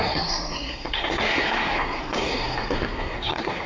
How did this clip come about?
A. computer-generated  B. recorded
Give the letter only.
A